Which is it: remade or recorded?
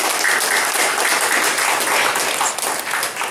recorded